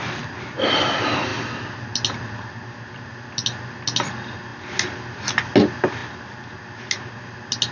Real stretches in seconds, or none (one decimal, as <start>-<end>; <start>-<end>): 0.0-7.7

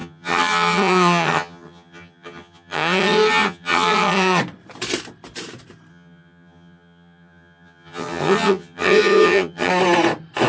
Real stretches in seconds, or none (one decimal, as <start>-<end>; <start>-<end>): 4.4-5.9; 9.7-10.5

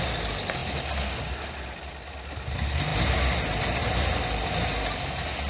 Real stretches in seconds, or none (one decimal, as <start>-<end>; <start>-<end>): 0.0-5.5

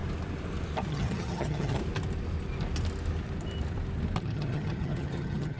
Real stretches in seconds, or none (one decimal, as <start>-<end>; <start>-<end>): 0.0-0.9; 1.8-4.2